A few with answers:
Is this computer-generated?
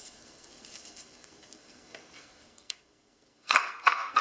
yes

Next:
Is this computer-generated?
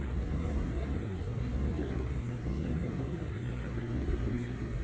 yes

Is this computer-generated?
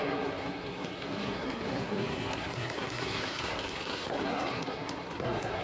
yes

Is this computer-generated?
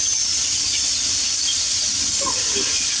no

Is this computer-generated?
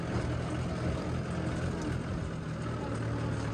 no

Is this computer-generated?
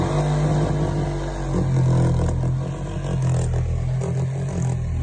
no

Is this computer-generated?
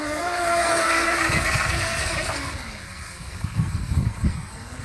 yes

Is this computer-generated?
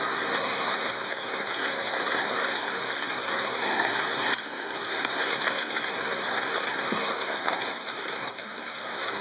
yes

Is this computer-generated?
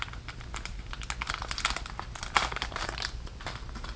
no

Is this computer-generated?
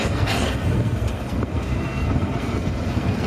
yes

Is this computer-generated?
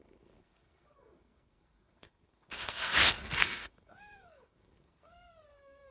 yes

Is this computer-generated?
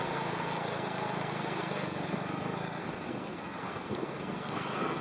yes